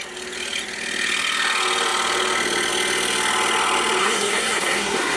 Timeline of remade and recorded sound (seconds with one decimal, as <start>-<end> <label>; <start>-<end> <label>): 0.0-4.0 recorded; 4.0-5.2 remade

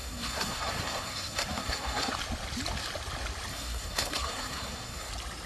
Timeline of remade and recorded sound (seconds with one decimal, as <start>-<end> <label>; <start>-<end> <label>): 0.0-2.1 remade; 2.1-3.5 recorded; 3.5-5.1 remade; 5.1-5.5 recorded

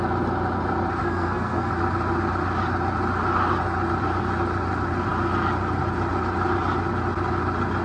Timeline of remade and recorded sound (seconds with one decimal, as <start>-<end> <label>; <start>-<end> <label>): 0.0-1.0 recorded; 1.0-1.7 remade; 1.7-7.8 recorded

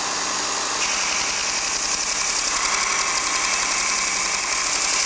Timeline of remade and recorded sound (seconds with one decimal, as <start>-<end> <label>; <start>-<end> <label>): 0.0-5.1 recorded

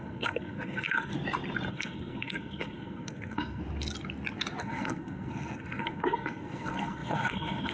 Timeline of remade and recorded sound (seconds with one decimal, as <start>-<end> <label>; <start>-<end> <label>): 0.0-1.1 remade; 1.1-1.7 recorded; 1.7-3.6 remade; 3.6-4.6 recorded; 4.6-7.7 remade